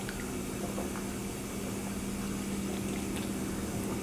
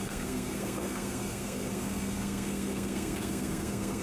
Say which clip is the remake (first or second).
second